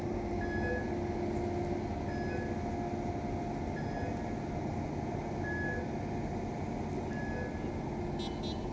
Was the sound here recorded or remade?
recorded